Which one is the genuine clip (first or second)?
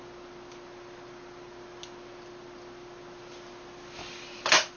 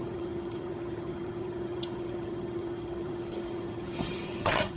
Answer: first